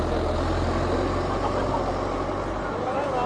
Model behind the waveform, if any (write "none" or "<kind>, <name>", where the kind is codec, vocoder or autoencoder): none